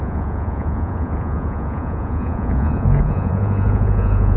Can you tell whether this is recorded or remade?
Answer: remade